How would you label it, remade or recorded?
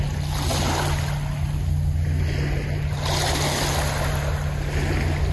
recorded